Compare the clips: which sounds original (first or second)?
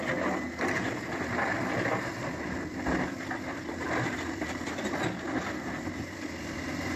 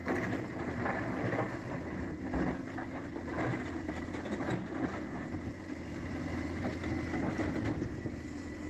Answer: second